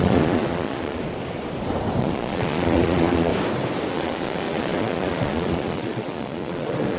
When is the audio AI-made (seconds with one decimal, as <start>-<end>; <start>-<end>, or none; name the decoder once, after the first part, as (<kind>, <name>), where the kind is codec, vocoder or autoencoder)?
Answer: 0.0-1.0 (vocoder, Vocos); 2.0-3.3; 3.9-7.0